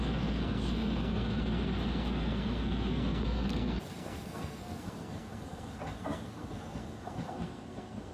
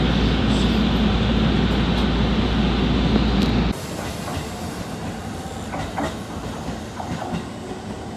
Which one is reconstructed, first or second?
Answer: first